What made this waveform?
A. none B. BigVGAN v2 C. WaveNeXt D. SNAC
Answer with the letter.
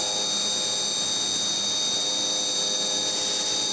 A